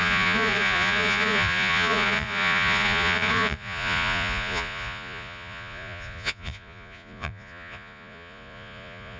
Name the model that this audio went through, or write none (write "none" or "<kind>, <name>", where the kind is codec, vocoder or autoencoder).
vocoder, Vocos